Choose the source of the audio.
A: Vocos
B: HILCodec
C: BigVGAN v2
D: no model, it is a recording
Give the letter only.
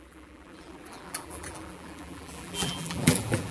C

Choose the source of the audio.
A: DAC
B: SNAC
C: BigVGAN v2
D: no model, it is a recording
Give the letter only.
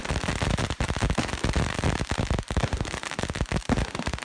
C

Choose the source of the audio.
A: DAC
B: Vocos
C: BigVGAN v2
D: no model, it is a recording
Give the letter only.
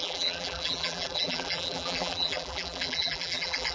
C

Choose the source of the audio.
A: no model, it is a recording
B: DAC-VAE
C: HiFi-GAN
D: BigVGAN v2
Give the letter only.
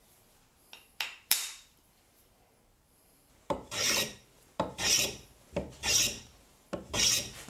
D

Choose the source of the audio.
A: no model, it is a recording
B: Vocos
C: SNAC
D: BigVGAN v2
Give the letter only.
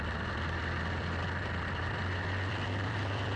D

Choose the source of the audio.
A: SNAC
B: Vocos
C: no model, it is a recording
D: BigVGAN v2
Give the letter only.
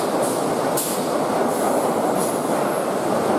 C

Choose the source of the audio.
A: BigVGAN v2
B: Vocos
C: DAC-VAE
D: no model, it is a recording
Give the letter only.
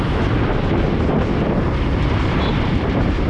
D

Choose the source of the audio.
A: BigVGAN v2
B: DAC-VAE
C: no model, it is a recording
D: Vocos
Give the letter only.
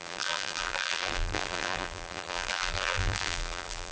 A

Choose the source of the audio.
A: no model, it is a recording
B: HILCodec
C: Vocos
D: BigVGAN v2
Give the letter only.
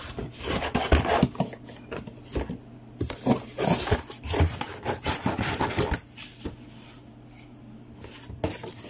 A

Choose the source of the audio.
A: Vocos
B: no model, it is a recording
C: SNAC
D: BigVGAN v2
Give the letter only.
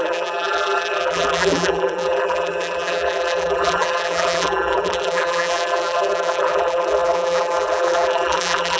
D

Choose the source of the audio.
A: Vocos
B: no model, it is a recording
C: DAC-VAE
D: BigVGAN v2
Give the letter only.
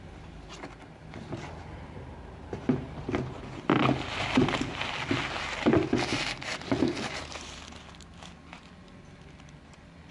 B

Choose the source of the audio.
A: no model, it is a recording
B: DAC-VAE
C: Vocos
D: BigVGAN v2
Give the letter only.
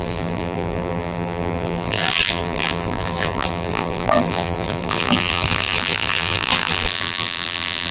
D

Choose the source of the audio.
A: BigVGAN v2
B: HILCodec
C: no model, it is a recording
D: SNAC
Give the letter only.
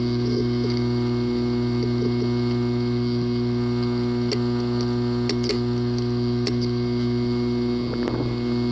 C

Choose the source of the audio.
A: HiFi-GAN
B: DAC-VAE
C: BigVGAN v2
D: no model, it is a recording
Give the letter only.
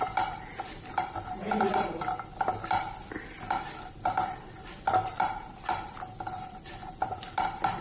C